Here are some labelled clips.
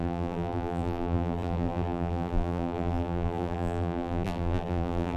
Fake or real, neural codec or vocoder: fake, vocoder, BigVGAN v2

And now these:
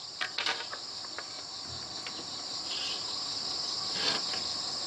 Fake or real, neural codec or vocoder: real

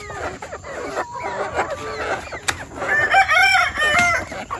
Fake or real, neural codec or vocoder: real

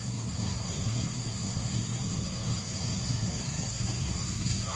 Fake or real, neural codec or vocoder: fake, codec, SNAC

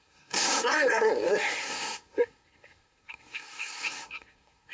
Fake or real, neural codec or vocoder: fake, codec, SNAC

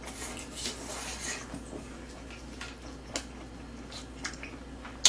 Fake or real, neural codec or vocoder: real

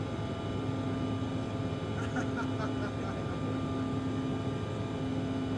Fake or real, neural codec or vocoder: real